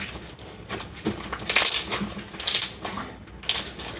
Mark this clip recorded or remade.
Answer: recorded